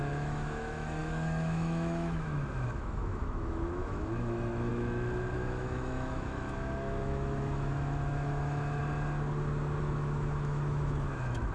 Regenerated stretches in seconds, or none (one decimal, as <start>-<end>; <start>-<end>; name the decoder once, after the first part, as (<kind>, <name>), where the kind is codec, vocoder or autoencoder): 0.0-8.8 (autoencoder, DAC-VAE); 9.8-11.5